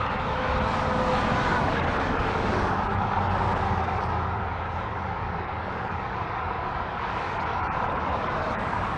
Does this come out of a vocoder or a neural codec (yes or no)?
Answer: yes